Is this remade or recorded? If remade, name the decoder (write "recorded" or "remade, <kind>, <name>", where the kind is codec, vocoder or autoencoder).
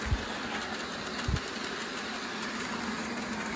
recorded